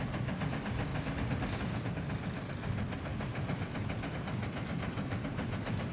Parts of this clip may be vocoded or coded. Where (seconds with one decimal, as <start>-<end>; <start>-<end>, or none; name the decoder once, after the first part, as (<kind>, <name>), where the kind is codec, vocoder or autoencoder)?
none